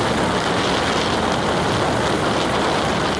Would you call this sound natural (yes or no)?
yes